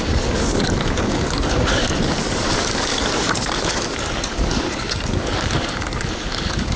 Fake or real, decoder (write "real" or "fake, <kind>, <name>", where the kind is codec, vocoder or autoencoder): fake, codec, DAC